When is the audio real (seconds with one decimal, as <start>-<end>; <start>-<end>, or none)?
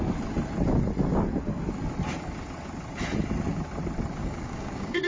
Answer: 0.0-4.2